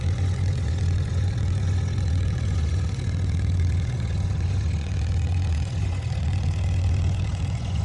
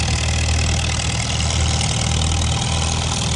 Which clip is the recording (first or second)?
second